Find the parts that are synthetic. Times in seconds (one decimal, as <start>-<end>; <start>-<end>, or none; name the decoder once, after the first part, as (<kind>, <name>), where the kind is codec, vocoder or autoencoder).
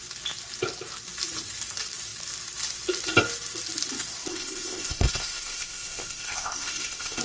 4.3-7.2 (codec, ZipCodec)